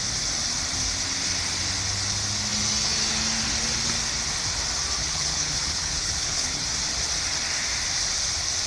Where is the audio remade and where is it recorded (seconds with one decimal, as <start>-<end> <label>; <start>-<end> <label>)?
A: 0.0-5.0 recorded; 5.0-6.6 remade; 6.6-8.7 recorded